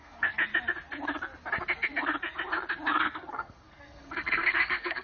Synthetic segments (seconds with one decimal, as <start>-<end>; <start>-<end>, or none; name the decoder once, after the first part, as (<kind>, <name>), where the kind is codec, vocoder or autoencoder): 0.0-0.4 (codec, SNAC); 3.0-5.0